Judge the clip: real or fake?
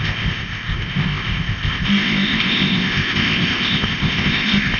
fake